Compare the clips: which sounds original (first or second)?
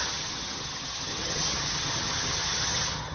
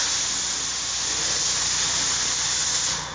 second